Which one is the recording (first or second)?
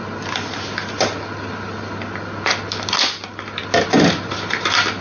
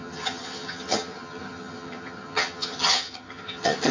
first